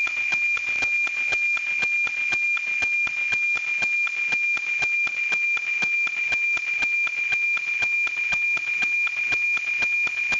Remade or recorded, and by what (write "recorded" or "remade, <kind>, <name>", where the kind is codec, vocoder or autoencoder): recorded